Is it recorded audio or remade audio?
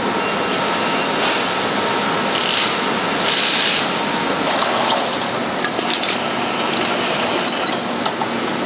recorded